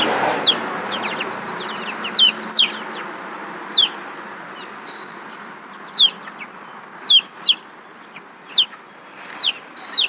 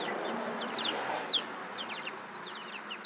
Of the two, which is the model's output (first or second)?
second